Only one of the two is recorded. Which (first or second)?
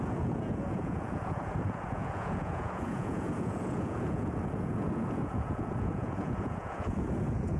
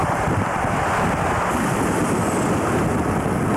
second